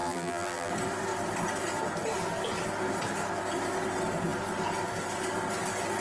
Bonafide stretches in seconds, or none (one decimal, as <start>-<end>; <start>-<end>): 0.7-6.0